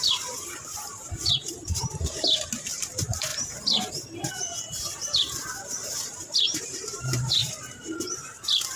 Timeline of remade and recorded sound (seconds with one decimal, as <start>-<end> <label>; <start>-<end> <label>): 0.0-8.8 remade